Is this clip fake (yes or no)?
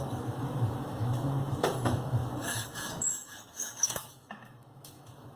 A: yes